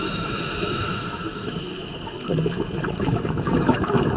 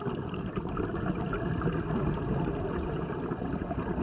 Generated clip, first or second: first